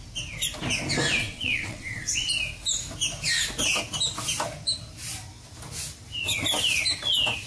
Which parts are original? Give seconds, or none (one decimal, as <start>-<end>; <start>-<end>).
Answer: 0.0-1.2; 2.3-7.5